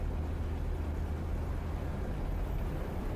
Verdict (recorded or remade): recorded